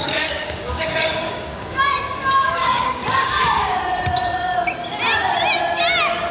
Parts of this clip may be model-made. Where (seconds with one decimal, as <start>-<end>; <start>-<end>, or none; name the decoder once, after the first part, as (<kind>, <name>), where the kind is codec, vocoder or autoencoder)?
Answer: 0.0-3.8 (codec, DAC)